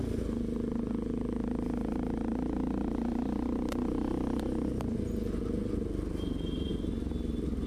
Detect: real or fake real